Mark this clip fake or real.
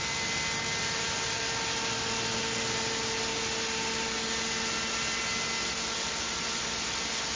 real